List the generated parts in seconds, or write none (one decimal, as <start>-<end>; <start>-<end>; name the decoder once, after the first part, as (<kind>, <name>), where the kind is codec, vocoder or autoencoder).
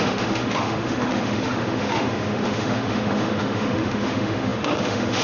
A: 0.0-5.2 (autoencoder, DAC-VAE)